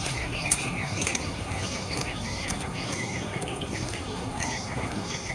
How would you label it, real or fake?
fake